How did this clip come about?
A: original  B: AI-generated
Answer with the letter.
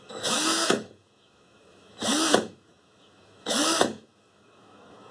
B